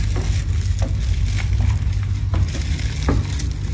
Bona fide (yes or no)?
yes